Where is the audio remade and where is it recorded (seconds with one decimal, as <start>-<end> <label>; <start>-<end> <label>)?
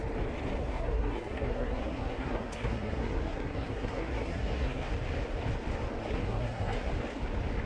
0.0-0.6 recorded; 0.6-4.9 remade; 4.9-6.0 recorded; 6.0-6.9 remade; 6.9-7.7 recorded